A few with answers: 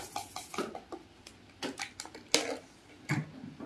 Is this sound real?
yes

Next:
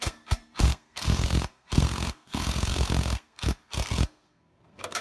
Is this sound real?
no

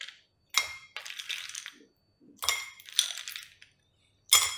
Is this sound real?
yes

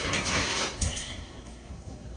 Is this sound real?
no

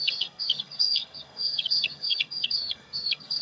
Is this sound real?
no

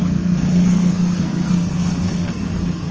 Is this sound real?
no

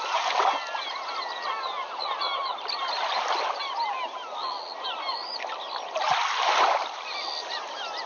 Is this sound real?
yes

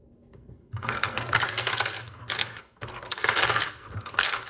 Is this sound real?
no